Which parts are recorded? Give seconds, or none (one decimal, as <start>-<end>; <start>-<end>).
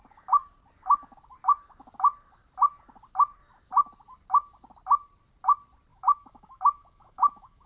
0.0-5.9